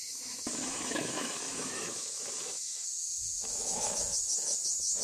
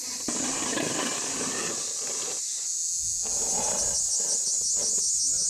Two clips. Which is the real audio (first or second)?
second